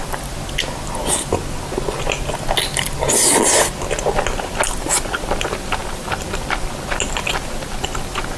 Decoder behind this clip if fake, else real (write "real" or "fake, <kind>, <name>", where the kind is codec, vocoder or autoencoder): real